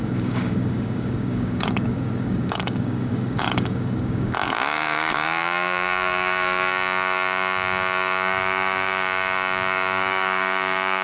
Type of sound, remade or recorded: remade